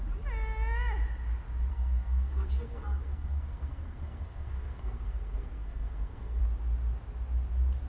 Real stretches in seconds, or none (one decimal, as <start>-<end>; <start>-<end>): 0.0-1.7; 6.4-7.9